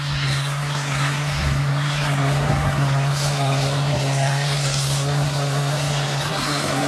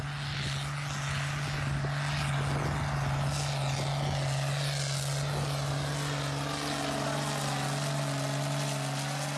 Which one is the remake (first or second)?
first